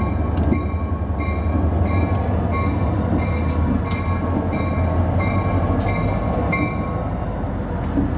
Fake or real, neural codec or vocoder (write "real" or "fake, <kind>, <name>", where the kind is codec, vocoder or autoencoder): real